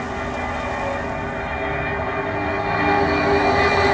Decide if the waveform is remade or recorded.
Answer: recorded